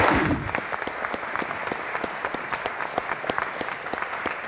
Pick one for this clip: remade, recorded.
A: recorded